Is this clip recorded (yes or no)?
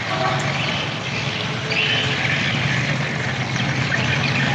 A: yes